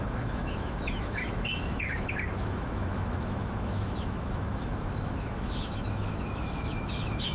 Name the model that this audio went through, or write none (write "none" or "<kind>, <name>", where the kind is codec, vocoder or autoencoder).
autoencoder, DAC-VAE